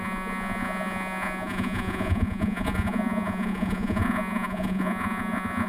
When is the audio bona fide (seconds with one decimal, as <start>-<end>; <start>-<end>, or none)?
none